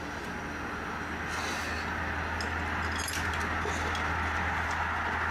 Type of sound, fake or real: real